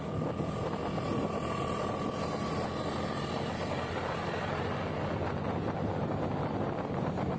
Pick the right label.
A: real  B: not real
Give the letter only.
A